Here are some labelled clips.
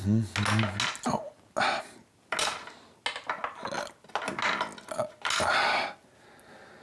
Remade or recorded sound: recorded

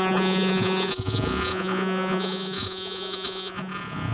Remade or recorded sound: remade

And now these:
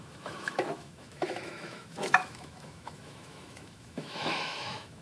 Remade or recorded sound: remade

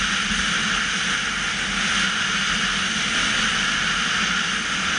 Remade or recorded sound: recorded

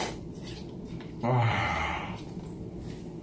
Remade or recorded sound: remade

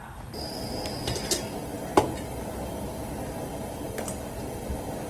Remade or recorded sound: recorded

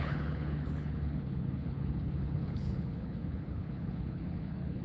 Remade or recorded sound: remade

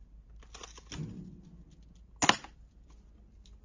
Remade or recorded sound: recorded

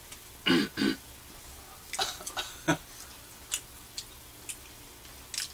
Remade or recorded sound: recorded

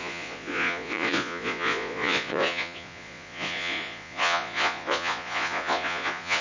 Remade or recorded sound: remade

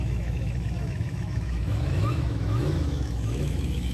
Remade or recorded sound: remade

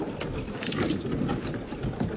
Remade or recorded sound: recorded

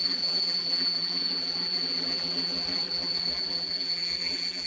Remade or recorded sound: remade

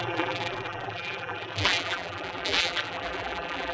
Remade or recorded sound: remade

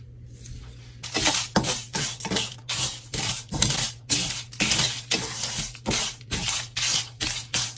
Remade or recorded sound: recorded